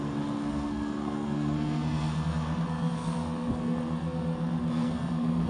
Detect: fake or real fake